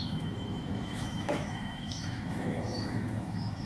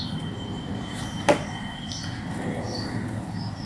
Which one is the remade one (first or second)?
first